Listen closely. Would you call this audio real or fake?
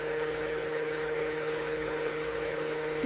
fake